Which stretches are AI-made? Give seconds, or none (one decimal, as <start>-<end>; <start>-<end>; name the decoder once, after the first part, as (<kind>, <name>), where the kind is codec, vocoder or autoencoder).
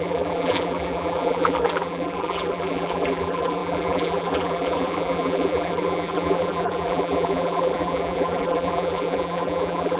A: 0.0-10.0 (vocoder, BigVGAN v2)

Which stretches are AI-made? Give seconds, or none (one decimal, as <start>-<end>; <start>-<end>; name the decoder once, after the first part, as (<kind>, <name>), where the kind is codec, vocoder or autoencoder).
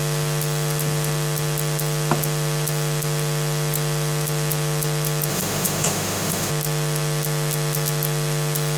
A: 5.3-6.5 (autoencoder, DAC-VAE)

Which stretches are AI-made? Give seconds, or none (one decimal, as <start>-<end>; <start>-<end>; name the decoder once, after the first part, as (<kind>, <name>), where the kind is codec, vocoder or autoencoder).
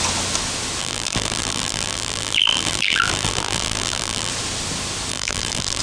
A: 0.8-4.3 (vocoder, BigVGAN v2); 5.1-5.8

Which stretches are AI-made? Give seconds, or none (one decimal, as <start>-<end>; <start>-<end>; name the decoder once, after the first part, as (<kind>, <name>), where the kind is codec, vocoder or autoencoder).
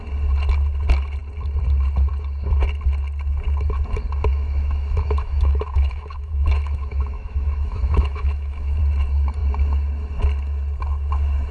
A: 4.3-8.8 (autoencoder, DAC-VAE)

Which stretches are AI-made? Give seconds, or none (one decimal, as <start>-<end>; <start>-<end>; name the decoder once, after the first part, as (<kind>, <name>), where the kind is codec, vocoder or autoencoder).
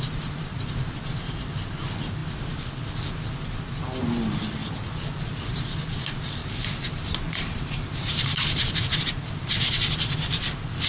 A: 4.6-5.2 (vocoder, BigVGAN v2); 6.4-9.5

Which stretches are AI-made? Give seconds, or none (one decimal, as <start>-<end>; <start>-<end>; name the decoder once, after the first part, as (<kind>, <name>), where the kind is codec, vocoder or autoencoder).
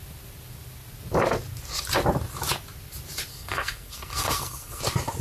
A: 3.3-4.8 (codec, SNAC)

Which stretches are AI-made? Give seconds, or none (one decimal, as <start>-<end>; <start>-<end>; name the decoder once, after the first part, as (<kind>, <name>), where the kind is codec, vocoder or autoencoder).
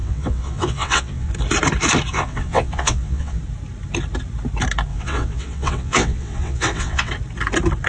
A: 0.0-1.3 (vocoder, WaveNeXt); 2.1-3.4; 4.9-7.1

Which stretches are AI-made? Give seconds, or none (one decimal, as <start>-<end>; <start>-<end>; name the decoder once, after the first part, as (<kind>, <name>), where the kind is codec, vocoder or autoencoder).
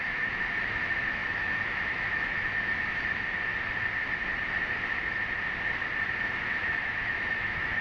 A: 0.0-3.5 (autoencoder, DAC-VAE); 6.6-7.8